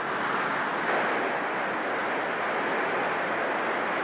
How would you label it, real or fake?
real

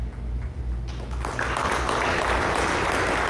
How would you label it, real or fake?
real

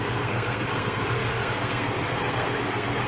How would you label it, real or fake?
fake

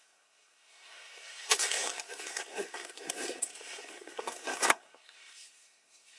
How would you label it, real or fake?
fake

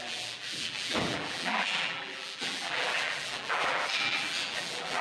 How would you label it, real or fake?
fake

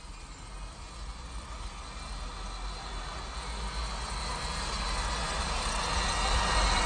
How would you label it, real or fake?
real